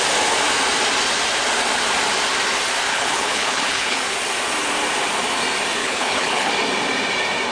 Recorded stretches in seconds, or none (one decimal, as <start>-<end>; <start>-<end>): 0.0-2.9; 4.0-5.8; 6.5-7.5